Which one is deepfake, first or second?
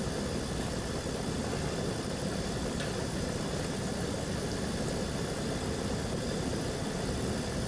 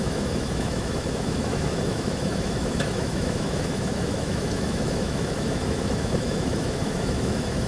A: second